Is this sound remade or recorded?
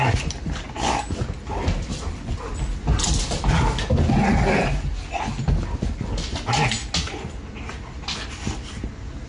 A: recorded